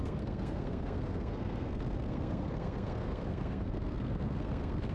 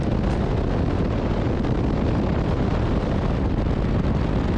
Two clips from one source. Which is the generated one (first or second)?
first